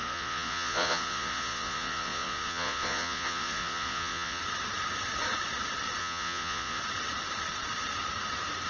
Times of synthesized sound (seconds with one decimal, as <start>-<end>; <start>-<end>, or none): 0.0-4.4; 6.0-6.8